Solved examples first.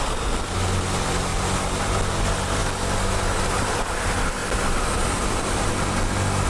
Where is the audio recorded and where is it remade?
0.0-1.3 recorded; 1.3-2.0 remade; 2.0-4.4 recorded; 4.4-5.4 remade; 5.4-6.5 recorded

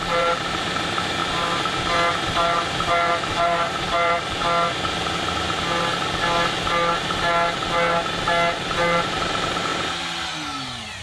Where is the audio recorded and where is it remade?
0.0-1.2 remade; 1.2-2.1 recorded; 2.1-4.4 remade; 4.4-8.8 recorded; 8.8-9.7 remade; 9.7-11.0 recorded